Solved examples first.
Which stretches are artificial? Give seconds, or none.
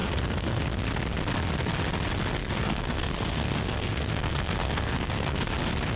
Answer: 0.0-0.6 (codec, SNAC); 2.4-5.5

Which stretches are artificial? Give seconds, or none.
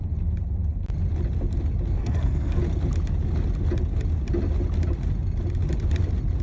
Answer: 2.0-2.6 (codec, SNAC)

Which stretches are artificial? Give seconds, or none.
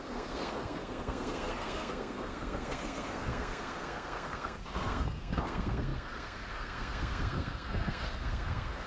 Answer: 0.0-8.9 (codec, SNAC)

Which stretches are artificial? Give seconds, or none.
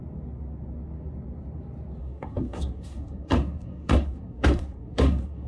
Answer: 2.0-5.5 (codec, SNAC)